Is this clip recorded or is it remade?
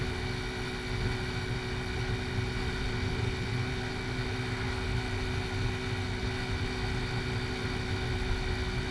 recorded